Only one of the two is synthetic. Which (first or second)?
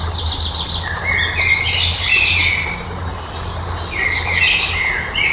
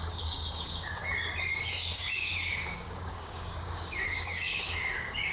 second